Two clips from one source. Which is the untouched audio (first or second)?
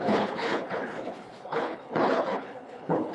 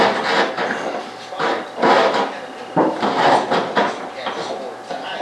second